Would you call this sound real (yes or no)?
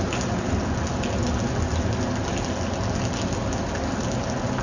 yes